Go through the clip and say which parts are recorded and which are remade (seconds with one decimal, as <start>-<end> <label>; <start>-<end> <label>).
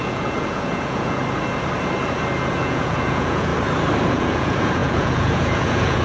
0.0-1.2 remade; 1.2-2.5 recorded; 2.5-3.5 remade; 3.5-4.1 recorded; 4.1-6.0 remade